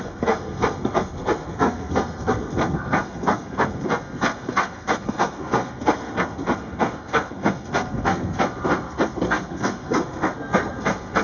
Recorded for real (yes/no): no